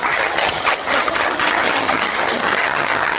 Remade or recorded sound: remade